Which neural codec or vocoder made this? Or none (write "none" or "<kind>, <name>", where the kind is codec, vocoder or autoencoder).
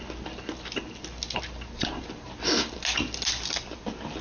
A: none